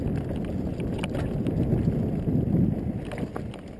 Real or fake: real